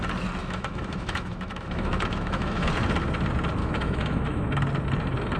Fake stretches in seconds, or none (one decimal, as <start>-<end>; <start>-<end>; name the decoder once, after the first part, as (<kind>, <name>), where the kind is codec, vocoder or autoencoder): 0.4-2.7 (autoencoder, DAC-VAE); 3.6-4.5

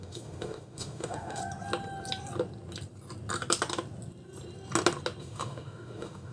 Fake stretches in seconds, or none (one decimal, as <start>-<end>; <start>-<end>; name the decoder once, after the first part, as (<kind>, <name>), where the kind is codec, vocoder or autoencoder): 0.0-1.4 (autoencoder, DAC-VAE); 5.2-6.3

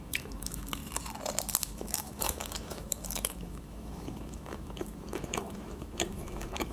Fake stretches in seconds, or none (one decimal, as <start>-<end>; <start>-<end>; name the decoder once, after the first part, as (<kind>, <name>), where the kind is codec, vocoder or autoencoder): 0.0-0.8 (autoencoder, DAC-VAE); 1.6-6.7

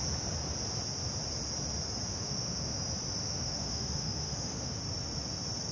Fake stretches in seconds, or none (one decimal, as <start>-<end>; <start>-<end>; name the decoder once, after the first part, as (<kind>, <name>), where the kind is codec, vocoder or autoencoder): 2.1-2.8 (autoencoder, DAC-VAE); 3.2-4.8

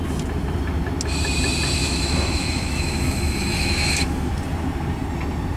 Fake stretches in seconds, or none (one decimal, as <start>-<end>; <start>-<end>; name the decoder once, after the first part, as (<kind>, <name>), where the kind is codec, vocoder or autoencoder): 1.8-4.3 (autoencoder, DAC-VAE)

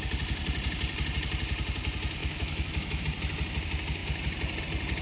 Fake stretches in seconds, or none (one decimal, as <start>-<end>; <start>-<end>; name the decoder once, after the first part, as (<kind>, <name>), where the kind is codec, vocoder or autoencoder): 2.2-3.0 (autoencoder, DAC-VAE)

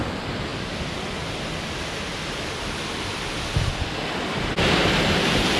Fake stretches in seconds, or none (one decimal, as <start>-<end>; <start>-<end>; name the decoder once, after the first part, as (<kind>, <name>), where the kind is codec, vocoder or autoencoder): none

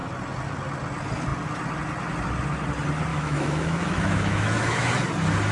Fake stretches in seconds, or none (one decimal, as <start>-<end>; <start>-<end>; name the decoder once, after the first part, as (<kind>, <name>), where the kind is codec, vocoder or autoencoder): 3.1-4.9 (autoencoder, DAC-VAE)